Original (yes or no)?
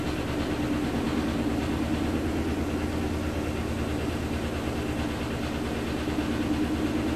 yes